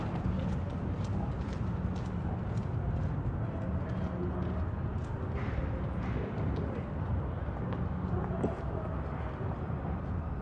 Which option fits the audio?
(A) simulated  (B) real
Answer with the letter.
B